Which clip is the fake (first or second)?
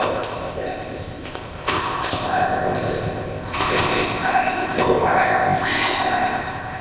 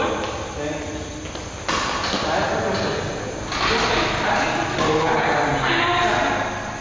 first